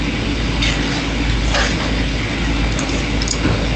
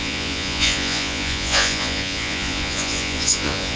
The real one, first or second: first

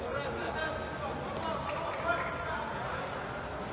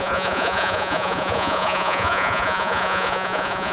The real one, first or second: first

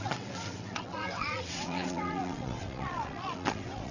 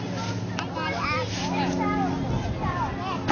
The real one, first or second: second